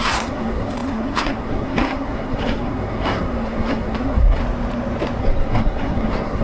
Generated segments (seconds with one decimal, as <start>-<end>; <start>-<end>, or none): 0.0-4.4; 5.2-6.4